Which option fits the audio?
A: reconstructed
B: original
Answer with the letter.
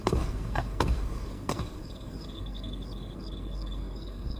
A